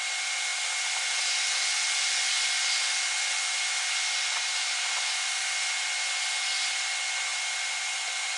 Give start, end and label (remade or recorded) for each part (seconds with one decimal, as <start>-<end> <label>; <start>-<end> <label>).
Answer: 0.0-0.5 recorded; 0.5-1.4 remade; 1.4-8.4 recorded